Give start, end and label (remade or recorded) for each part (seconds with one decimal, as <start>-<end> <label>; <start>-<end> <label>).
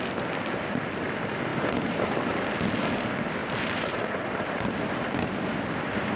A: 0.0-1.5 recorded; 1.5-2.4 remade; 2.4-3.4 recorded; 3.4-5.2 remade; 5.2-6.2 recorded